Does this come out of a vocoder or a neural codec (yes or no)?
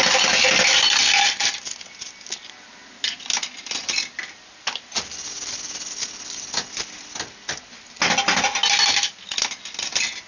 no